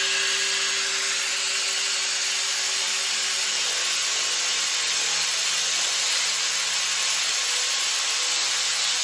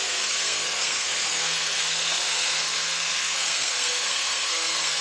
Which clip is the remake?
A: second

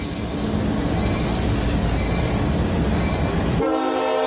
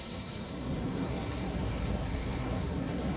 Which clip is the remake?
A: second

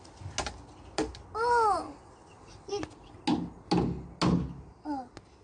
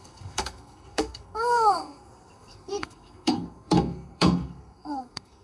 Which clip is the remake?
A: second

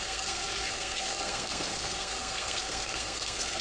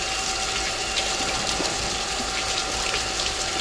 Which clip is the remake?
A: first